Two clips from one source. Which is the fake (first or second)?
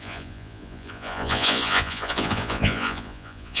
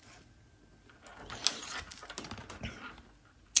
first